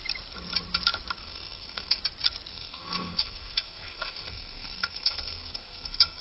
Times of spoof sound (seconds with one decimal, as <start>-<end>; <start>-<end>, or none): 1.2-2.0; 2.5-6.2